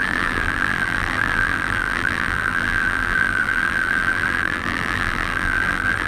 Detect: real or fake fake